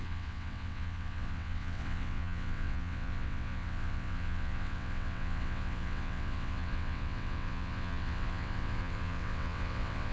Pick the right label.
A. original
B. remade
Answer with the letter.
B